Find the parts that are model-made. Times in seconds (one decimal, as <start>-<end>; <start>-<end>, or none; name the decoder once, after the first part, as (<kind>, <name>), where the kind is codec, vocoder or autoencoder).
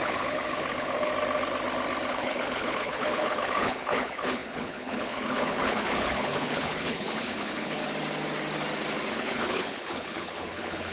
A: 0.0-1.1 (codec, HILCodec); 2.1-7.8; 9.1-10.9